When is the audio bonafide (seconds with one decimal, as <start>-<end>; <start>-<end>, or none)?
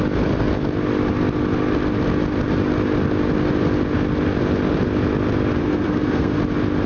0.0-5.6; 6.4-6.9